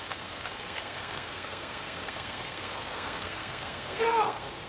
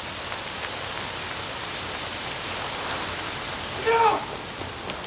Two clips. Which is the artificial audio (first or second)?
first